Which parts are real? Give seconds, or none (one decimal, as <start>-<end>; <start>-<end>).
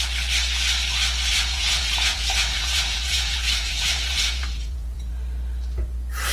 0.0-1.3; 5.1-6.3